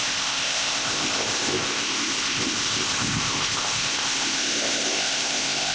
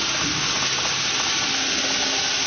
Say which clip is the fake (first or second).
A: first